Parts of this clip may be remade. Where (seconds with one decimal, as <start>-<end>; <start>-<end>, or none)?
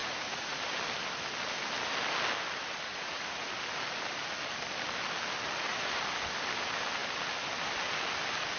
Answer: 0.0-0.6; 2.9-3.5